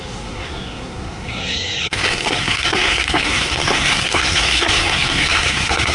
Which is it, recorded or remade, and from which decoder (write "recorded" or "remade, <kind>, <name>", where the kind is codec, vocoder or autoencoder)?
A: remade, codec, SNAC